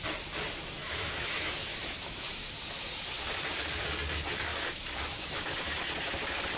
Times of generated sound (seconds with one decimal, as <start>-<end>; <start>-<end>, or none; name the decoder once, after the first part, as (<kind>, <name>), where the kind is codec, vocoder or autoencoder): 0.8-2.5 (autoencoder, DAC-VAE); 4.5-5.8